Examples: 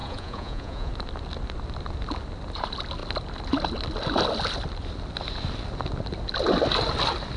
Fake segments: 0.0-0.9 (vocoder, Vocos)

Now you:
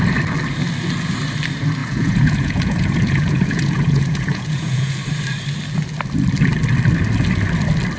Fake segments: 1.8-5.0 (vocoder, Vocos)